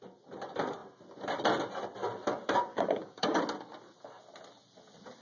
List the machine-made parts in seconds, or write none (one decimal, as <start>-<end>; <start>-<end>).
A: 2.7-3.4